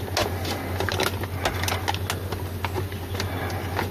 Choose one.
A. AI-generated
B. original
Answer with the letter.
B